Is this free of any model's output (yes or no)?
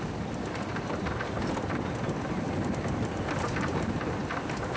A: yes